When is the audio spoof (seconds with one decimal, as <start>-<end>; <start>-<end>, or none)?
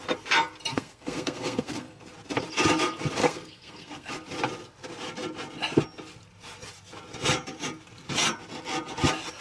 0.7-2.1; 3.2-4.1